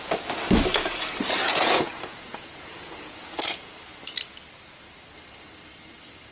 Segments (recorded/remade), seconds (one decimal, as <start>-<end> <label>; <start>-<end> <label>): 0.0-1.4 recorded; 1.4-3.7 remade; 3.7-6.3 recorded